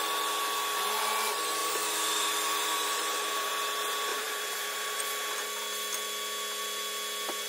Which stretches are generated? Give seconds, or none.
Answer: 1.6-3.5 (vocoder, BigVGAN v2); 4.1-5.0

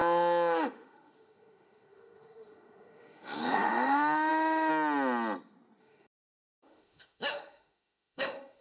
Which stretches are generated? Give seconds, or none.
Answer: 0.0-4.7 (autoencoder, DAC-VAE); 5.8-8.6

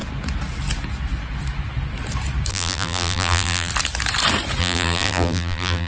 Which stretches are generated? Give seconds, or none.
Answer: 2.5-3.7 (vocoder, BigVGAN v2); 4.6-5.9

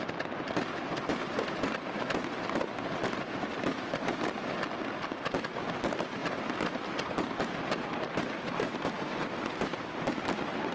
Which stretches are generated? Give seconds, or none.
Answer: none

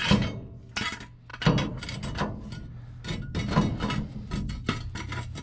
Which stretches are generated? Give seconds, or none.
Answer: none